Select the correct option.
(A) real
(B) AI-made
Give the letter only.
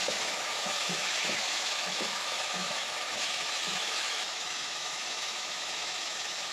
B